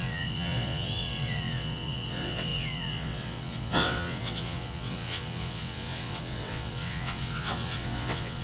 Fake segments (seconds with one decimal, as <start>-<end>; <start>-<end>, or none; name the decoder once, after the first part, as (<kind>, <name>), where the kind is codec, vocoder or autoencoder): 0.0-8.4 (vocoder, WaveNeXt)